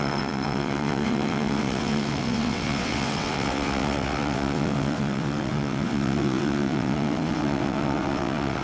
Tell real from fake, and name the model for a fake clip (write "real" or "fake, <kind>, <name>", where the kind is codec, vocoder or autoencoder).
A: fake, vocoder, WaveNeXt